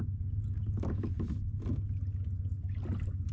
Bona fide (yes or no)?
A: yes